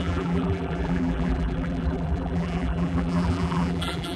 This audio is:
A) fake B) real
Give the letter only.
A